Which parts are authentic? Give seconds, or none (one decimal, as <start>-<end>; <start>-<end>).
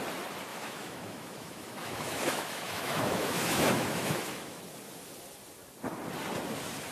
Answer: 0.0-0.5; 4.6-6.9